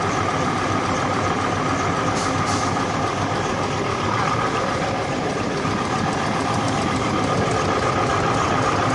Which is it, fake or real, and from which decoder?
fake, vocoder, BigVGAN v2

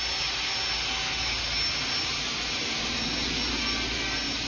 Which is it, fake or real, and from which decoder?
real